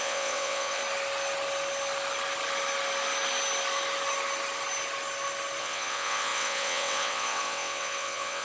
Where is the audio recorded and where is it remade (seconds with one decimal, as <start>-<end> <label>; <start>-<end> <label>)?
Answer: 0.0-0.8 remade; 0.8-5.6 recorded; 5.6-8.4 remade